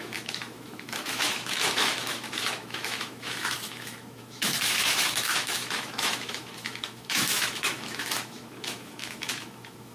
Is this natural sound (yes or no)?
no